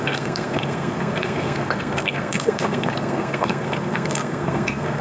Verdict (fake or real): fake